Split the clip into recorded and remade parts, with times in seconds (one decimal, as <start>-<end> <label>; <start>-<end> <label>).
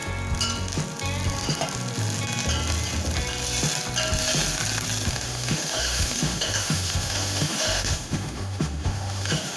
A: 0.0-5.1 recorded; 5.1-9.6 remade